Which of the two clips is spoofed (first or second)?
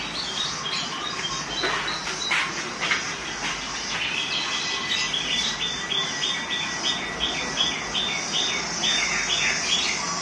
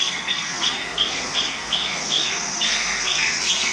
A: second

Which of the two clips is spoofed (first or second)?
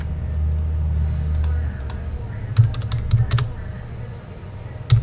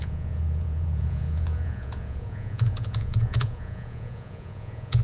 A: second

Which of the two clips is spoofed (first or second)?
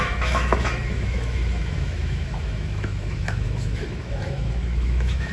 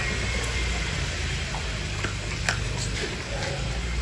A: first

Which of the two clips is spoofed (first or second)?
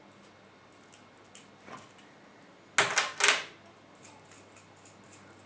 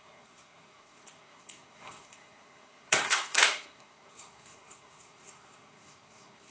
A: second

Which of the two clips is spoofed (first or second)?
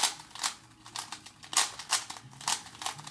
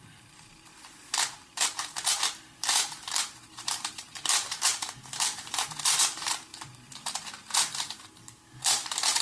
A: second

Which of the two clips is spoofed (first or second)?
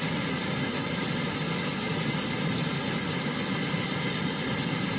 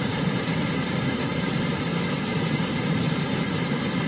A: second